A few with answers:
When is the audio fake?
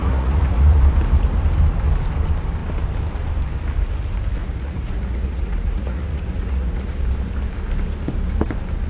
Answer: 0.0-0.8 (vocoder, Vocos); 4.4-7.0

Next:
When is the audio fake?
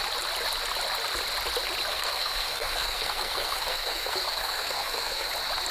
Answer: 1.9-5.3 (codec, SNAC)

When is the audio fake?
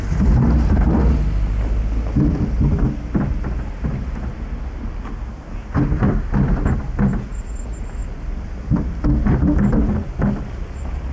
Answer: none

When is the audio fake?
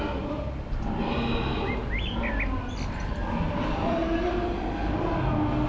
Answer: none